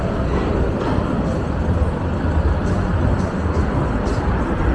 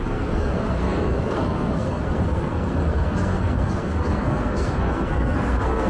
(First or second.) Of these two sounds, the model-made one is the second